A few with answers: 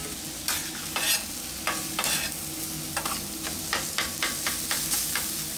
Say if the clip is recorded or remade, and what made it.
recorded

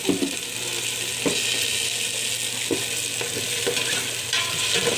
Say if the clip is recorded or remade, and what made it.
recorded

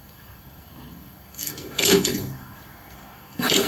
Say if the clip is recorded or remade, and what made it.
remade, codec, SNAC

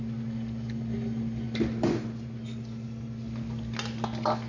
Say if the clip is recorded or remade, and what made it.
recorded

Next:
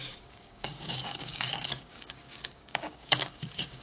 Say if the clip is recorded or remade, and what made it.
remade, codec, DAC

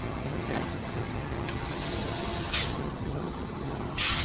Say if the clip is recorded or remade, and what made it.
remade, vocoder, HiFi-GAN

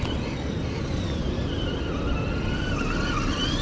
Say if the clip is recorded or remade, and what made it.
recorded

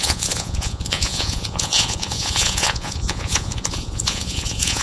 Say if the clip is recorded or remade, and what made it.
remade, vocoder, Vocos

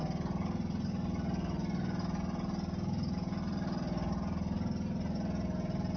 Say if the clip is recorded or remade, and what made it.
recorded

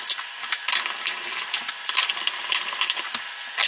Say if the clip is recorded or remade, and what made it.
recorded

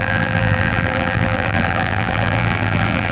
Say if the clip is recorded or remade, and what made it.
remade, vocoder, BigVGAN v2